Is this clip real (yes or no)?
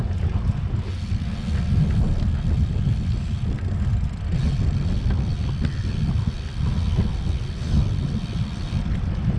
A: yes